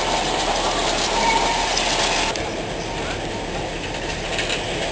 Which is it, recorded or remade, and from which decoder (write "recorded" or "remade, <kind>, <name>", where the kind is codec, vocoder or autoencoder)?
recorded